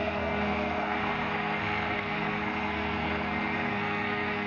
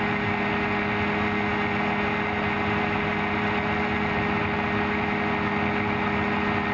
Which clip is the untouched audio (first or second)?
second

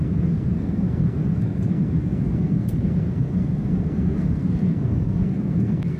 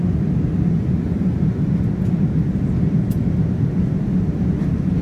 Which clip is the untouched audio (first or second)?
second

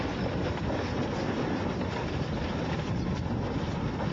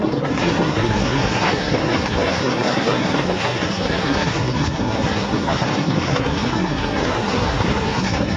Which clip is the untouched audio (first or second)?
first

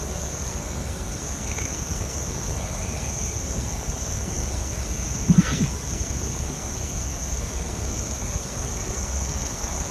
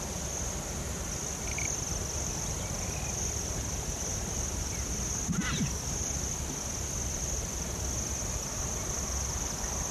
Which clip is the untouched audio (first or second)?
second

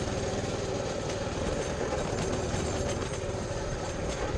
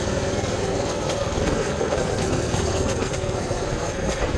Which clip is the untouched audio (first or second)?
first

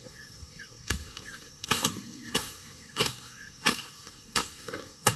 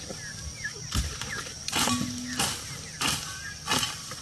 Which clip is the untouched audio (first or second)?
second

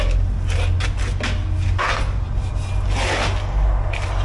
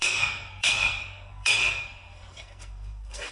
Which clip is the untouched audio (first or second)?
first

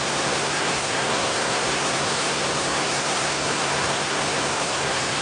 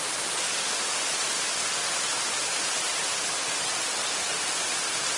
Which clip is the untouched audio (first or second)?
second